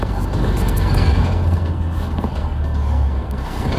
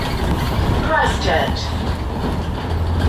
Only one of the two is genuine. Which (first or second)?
second